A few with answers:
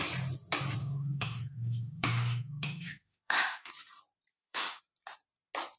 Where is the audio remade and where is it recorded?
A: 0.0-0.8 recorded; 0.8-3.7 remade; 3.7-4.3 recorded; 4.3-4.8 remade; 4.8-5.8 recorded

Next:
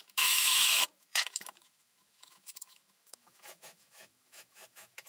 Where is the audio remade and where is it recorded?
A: 0.0-5.1 remade